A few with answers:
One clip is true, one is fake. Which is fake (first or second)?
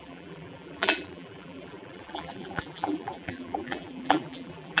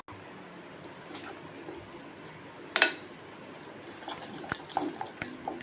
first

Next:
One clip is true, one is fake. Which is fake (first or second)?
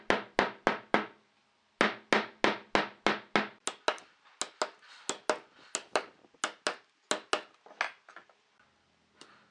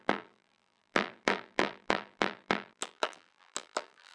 second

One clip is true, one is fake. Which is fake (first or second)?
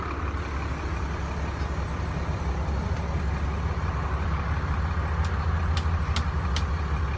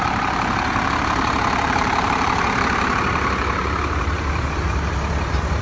second